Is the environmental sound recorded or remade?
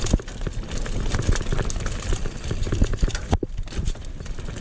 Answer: recorded